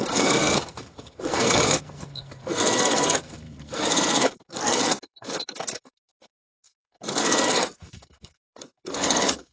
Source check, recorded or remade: remade